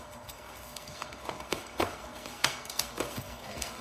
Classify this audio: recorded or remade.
remade